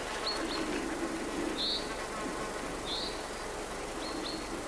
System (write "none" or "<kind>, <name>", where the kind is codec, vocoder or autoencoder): none